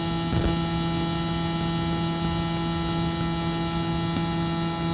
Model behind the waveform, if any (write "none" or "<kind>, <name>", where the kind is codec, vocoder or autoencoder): none